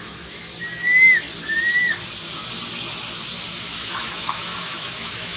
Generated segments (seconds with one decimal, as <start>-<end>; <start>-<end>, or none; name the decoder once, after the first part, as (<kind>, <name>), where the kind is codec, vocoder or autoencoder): 0.0-0.4 (autoencoder, DAC-VAE); 3.6-5.4